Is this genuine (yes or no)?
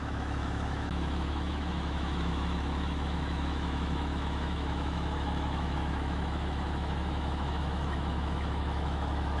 no